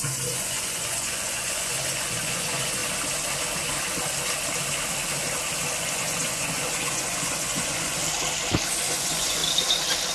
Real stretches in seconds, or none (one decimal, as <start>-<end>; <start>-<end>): 2.8-5.8; 8.0-8.7; 9.4-10.1